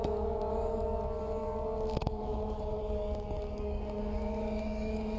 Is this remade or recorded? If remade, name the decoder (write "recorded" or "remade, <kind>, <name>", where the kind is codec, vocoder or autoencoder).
remade, codec, DAC